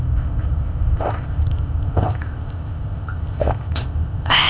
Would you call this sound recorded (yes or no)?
no